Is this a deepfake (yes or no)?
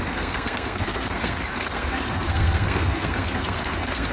yes